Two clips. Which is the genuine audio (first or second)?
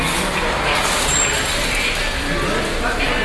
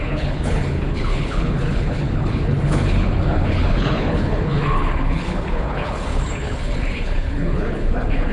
first